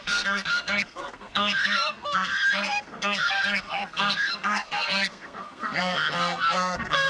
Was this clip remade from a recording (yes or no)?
yes